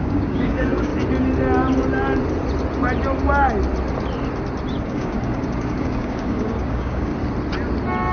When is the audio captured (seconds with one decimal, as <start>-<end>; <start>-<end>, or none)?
0.9-4.8; 7.1-8.1

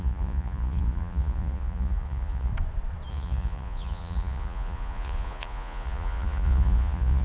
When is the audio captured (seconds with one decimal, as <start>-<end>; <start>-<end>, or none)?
2.5-3.1

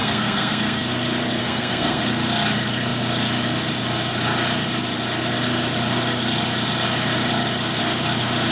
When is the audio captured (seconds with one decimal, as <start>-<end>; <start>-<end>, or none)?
0.8-1.4; 2.0-8.5

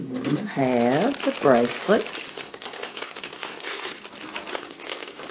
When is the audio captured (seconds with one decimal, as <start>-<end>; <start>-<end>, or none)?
0.6-2.3; 4.0-4.5

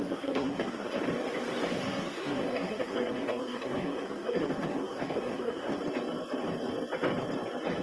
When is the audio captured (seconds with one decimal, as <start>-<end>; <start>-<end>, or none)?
1.0-1.8; 5.8-7.8

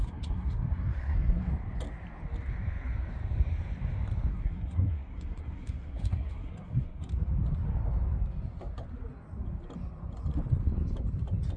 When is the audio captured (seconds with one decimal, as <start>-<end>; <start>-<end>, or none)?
1.5-4.3; 7.1-11.6